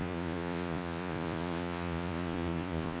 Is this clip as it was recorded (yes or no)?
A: no